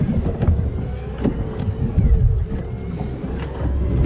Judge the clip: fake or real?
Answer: real